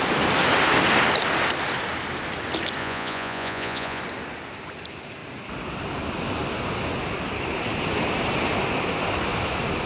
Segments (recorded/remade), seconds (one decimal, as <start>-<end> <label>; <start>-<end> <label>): 0.0-2.8 recorded; 2.8-4.0 remade; 4.0-9.9 recorded